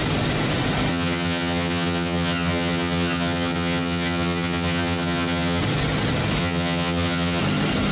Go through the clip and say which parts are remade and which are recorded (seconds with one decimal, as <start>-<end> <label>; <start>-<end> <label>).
0.0-0.9 recorded; 0.9-5.6 remade; 5.6-6.4 recorded; 6.4-7.4 remade; 7.4-7.9 recorded